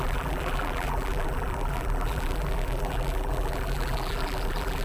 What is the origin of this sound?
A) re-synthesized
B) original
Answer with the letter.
A